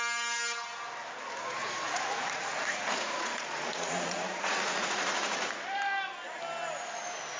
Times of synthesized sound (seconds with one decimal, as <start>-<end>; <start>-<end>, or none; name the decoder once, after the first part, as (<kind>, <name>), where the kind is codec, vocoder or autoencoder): 1.6-5.5 (vocoder, Vocos)